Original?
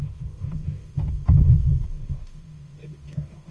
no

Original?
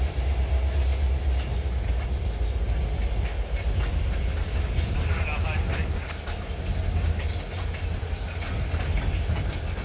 yes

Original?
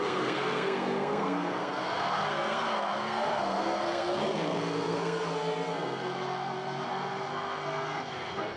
no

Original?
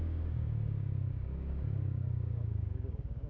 no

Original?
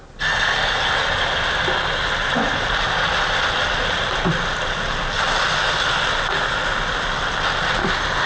yes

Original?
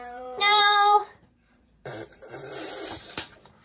no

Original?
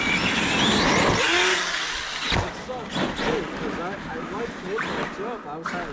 yes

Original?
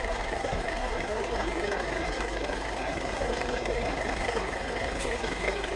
no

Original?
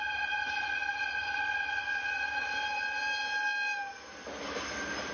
yes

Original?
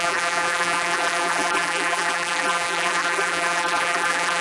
no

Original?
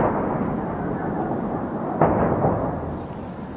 yes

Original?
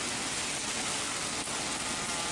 yes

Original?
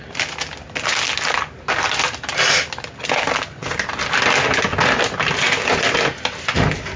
yes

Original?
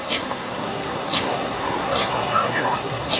no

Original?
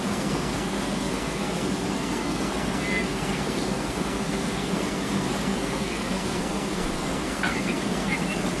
no